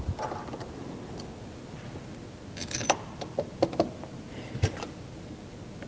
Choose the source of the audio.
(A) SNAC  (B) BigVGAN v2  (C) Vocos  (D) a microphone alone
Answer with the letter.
D